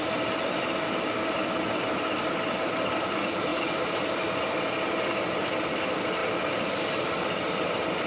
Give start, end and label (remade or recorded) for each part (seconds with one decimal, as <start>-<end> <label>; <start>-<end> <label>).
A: 0.0-8.1 recorded